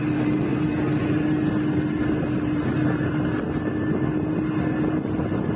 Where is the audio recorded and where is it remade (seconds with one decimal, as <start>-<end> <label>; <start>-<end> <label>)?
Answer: 0.0-5.6 recorded